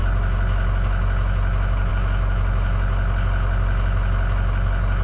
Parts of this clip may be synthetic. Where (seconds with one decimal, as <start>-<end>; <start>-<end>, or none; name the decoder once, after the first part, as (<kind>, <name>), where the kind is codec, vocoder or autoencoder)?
none